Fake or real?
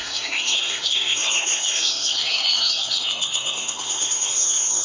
fake